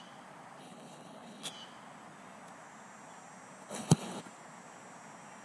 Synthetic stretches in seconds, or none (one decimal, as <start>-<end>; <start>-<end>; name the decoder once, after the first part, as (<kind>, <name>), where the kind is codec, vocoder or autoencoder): 0.6-1.5 (codec, HILCodec); 3.7-4.2